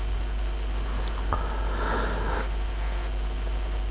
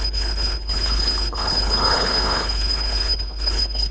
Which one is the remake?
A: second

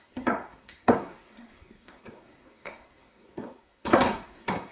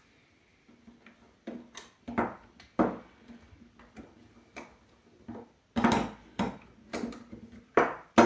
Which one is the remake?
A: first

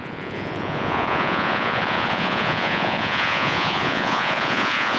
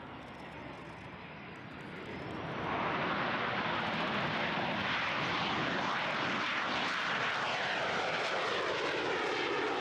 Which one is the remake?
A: first